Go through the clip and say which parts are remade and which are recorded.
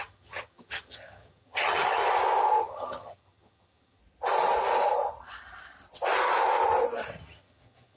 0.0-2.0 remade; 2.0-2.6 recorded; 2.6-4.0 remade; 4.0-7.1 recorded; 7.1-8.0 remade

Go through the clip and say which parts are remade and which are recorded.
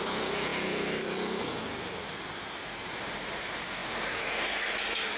0.0-5.2 recorded